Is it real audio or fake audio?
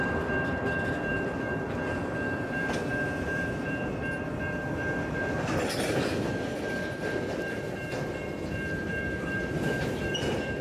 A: fake